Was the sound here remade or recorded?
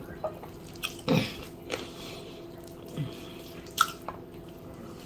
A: recorded